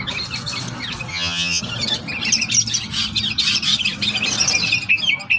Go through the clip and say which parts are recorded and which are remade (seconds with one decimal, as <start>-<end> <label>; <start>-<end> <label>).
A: 0.0-1.1 recorded; 1.1-1.6 remade; 1.6-5.4 recorded